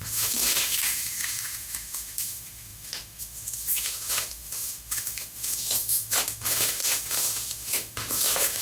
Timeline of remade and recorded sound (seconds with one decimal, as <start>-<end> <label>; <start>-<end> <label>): 0.0-8.6 remade